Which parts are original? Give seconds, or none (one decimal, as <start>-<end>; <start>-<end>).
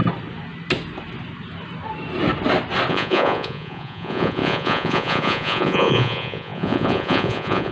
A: 0.0-2.9